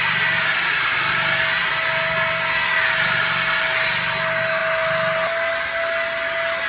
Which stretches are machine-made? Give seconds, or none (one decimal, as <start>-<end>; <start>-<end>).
none